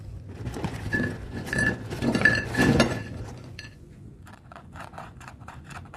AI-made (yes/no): yes